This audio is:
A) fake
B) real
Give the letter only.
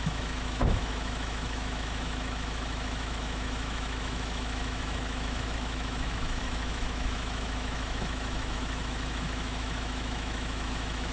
A